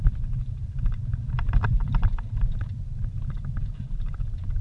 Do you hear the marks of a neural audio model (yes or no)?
yes